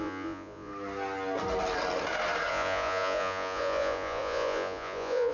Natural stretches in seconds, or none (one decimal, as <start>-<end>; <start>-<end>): 0.7-2.5